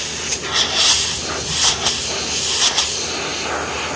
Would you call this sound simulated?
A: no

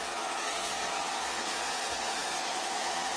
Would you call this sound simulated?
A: yes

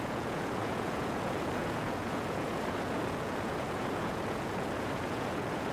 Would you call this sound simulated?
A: yes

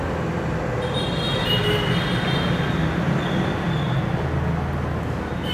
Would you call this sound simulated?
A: no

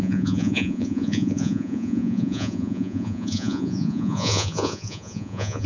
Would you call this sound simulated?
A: yes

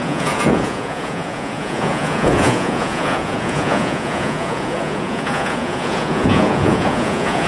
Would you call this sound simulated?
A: yes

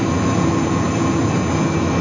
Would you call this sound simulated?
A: no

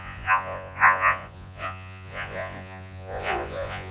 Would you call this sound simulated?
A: yes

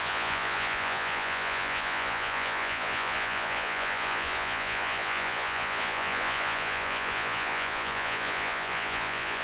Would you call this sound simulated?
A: yes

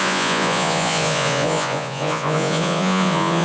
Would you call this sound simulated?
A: yes